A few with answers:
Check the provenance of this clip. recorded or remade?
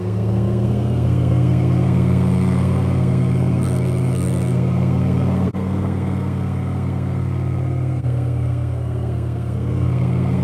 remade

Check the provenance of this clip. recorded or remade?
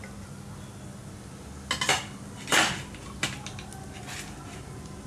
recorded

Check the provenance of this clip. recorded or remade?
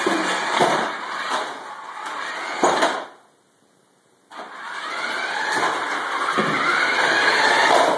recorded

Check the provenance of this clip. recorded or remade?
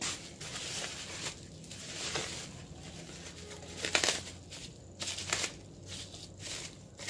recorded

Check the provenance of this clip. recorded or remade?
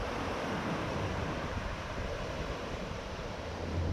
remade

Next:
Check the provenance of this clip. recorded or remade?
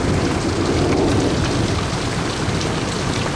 remade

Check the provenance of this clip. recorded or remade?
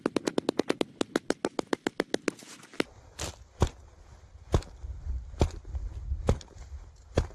recorded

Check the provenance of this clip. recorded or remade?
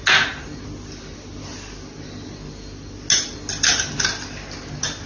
recorded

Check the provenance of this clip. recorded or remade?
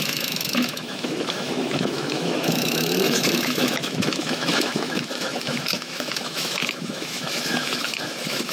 remade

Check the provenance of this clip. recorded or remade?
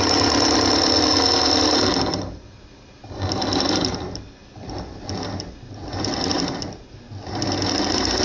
recorded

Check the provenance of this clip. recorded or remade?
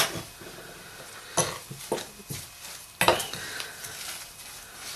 recorded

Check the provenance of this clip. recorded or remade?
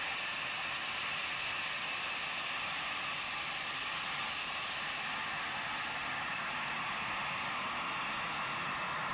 recorded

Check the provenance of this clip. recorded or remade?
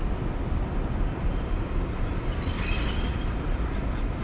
remade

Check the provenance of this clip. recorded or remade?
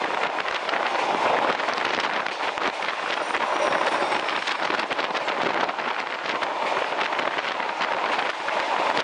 recorded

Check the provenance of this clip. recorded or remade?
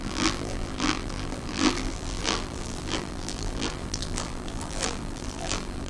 remade